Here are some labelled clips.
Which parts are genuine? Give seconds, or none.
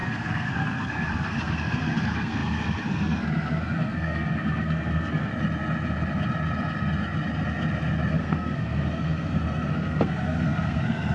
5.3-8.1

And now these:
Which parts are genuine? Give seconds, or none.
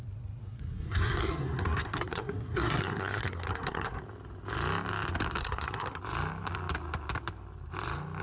0.0-0.4; 4.0-5.4; 6.0-8.2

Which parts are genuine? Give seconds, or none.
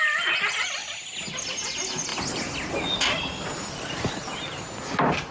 0.0-5.3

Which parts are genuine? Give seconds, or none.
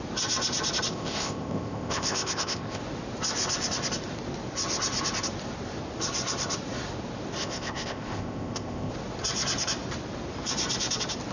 0.0-0.9; 2.8-7.4; 8.9-11.3